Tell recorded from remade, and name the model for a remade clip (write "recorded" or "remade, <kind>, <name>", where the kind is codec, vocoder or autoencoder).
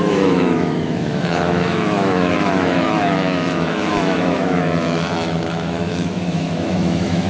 remade, autoencoder, DAC-VAE